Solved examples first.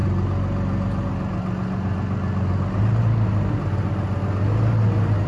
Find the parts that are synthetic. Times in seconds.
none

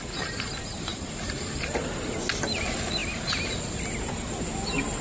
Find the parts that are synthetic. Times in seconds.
0.9-2.1

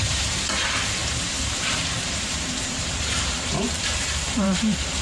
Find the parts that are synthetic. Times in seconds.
0.0-5.0

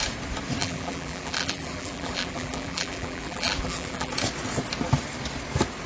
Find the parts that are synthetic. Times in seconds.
0.6-4.1

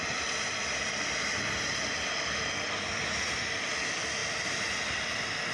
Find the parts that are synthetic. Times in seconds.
0.0-5.5

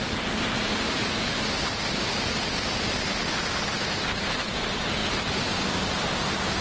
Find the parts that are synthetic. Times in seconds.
none

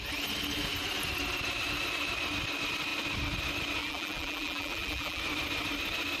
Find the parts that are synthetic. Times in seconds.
3.8-5.2